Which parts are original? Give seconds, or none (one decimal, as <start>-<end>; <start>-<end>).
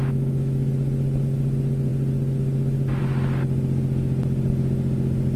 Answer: 0.7-5.4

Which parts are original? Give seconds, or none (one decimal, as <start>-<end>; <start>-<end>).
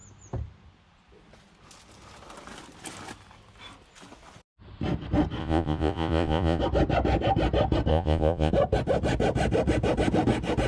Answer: 0.0-5.4; 6.6-7.9; 8.5-10.7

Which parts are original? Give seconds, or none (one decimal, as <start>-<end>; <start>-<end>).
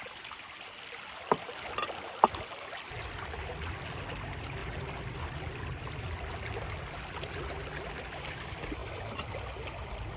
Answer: 0.0-10.2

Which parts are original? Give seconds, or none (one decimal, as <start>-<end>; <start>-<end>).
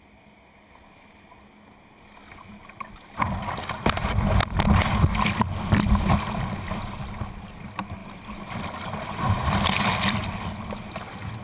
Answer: 0.0-8.0; 10.8-11.4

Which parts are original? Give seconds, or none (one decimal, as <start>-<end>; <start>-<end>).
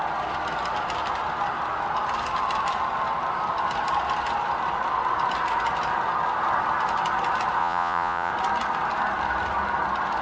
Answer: 0.0-7.6; 8.3-10.2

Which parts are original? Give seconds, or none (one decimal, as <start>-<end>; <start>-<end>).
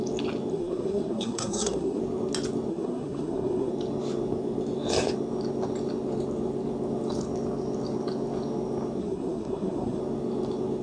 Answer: 0.0-0.5; 2.0-2.7; 3.7-9.0; 10.0-10.8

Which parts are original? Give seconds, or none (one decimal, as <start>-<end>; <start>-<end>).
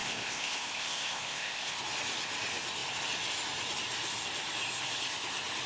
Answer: 1.8-5.7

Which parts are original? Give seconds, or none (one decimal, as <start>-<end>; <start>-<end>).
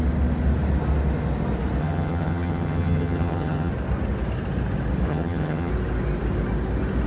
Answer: 0.0-1.8; 3.7-5.1; 5.7-7.1